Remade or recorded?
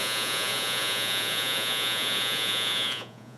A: remade